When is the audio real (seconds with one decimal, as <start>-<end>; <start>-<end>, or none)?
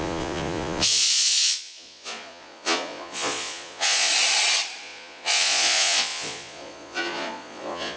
4.1-4.8